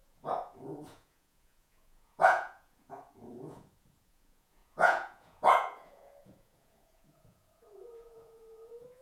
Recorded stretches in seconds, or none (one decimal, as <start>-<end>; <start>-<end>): none

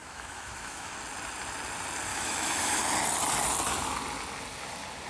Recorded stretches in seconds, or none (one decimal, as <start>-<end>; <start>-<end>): 0.9-2.1; 2.8-5.1

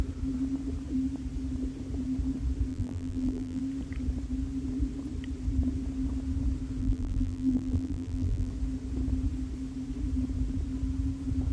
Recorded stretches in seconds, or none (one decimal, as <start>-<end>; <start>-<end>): 0.0-2.7; 3.6-6.8; 8.5-11.5

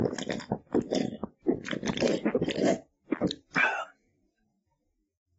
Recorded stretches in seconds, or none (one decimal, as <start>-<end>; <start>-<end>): 0.0-1.2; 4.4-5.4

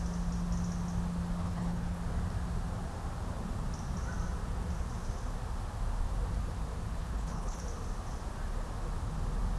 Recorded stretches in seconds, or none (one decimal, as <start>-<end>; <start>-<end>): 0.0-1.4; 2.0-7.0; 7.6-9.6

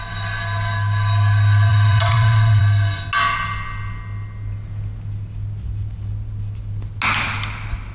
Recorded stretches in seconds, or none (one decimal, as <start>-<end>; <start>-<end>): 0.0-1.7; 2.6-7.9